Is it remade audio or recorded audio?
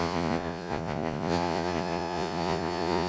remade